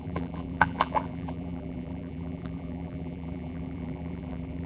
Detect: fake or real fake